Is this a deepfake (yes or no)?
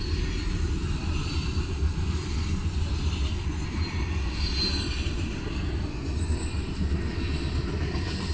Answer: no